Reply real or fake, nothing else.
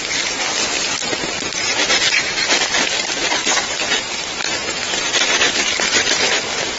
fake